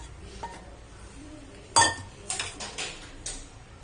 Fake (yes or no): no